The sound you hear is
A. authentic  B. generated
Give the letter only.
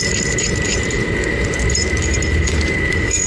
B